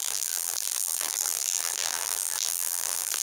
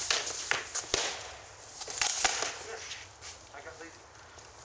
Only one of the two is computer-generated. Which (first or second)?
first